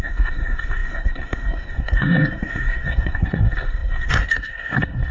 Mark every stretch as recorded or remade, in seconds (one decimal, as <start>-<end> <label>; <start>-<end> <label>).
0.0-5.1 remade